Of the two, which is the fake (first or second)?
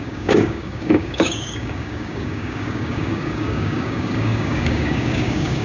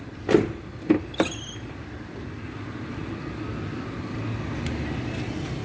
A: first